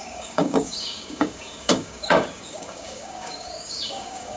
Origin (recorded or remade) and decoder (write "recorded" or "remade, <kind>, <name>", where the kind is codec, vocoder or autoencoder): remade, codec, DAC